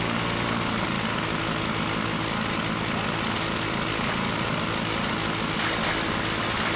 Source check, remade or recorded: recorded